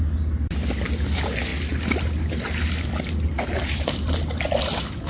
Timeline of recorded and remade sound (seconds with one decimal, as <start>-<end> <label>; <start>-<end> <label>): 0.0-5.1 recorded